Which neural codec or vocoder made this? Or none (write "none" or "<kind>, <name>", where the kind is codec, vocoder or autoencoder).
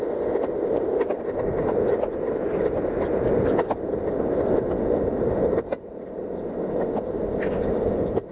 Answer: none